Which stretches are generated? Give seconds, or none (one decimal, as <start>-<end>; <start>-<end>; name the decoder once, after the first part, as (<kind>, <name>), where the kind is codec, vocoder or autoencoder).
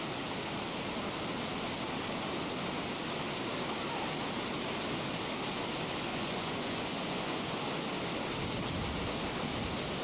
6.1-7.6 (vocoder, Vocos)